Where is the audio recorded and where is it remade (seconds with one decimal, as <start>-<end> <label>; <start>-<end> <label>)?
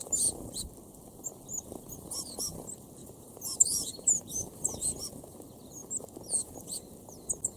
0.0-3.0 recorded; 3.0-4.2 remade; 4.2-7.6 recorded